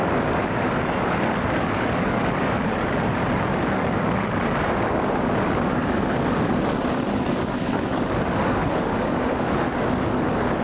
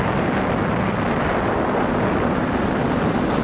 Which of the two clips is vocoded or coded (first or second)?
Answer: first